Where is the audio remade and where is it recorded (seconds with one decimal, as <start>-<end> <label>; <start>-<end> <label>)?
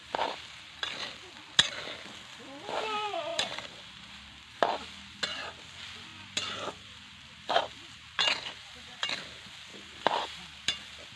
0.0-3.3 recorded; 3.3-4.2 remade; 4.2-9.7 recorded; 9.7-10.4 remade; 10.4-11.2 recorded